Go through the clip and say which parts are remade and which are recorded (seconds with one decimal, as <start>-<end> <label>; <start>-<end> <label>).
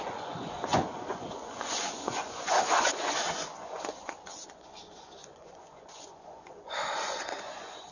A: 0.0-7.9 remade